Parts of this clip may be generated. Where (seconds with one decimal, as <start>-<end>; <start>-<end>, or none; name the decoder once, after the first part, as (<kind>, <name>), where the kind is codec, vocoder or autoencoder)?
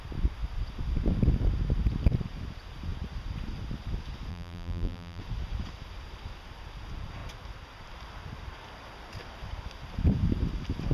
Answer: 4.3-5.2 (vocoder, BigVGAN v2)